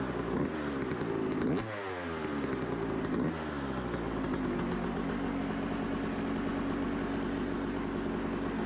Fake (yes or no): no